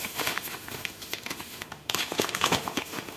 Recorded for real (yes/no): no